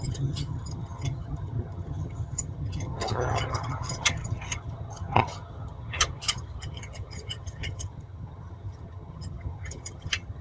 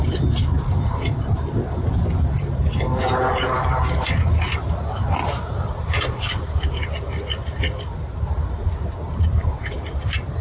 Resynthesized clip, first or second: first